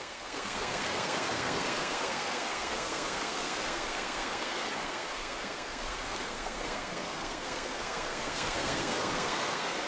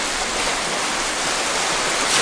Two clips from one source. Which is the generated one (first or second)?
first